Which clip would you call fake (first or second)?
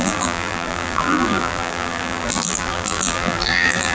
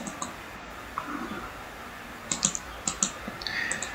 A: first